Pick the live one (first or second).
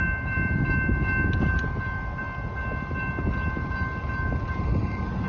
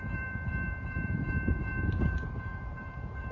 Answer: first